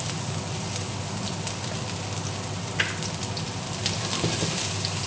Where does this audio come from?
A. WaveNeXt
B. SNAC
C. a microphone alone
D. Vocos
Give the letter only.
C